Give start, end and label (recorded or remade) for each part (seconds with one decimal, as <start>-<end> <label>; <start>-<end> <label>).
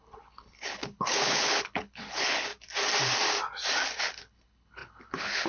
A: 0.0-2.5 remade; 2.5-4.0 recorded; 4.0-5.5 remade